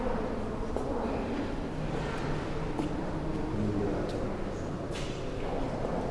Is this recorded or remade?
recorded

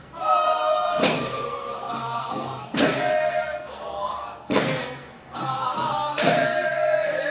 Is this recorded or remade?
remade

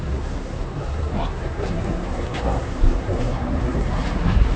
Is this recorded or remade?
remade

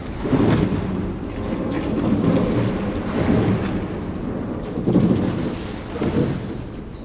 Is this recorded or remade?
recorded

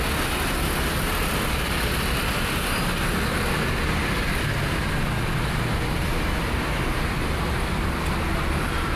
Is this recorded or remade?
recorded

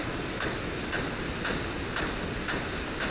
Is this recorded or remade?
recorded